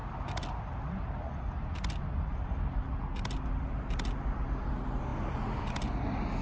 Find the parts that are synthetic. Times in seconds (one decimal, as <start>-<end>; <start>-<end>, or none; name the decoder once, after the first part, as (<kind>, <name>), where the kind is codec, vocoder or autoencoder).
none